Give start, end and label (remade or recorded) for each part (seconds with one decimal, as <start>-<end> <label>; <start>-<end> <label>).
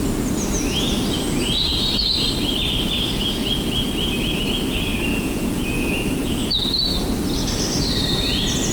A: 0.0-5.1 recorded; 5.1-6.8 remade; 6.8-8.7 recorded